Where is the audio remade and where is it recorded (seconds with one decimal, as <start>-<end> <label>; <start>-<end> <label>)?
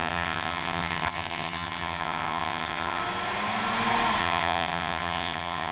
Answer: 0.0-3.0 remade; 3.0-4.2 recorded; 4.2-5.7 remade